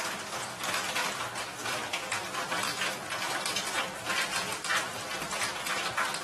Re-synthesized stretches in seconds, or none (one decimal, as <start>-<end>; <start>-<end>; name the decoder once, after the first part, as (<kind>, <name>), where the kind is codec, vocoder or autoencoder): none